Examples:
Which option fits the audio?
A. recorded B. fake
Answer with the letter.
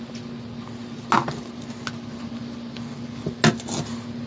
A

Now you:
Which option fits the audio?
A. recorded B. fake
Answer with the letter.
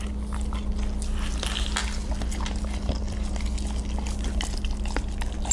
A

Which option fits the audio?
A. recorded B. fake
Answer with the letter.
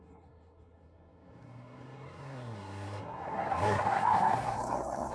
B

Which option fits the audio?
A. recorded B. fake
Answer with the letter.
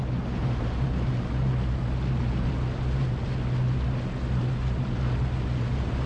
A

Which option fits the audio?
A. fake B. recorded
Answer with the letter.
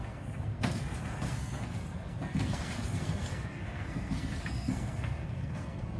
A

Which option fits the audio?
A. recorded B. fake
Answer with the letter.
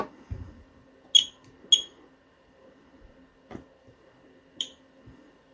A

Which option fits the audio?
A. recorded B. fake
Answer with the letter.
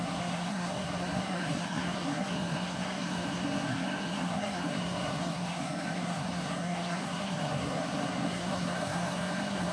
B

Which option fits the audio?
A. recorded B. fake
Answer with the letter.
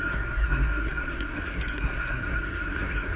B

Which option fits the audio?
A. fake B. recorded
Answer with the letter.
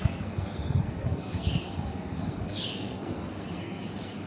A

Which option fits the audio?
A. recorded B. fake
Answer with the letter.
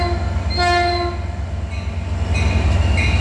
A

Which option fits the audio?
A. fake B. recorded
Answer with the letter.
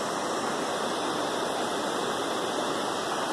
B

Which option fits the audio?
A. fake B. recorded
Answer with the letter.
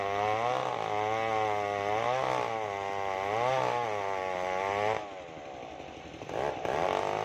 B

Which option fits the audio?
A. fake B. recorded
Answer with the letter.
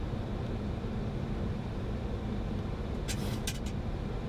B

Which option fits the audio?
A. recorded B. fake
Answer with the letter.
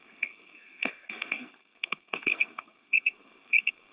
B